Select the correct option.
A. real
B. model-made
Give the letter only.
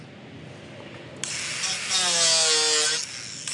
A